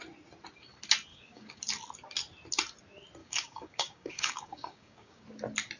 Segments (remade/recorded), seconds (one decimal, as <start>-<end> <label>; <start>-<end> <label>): 0.0-1.1 recorded; 1.1-1.6 remade; 1.6-3.2 recorded; 3.2-5.2 remade; 5.2-5.8 recorded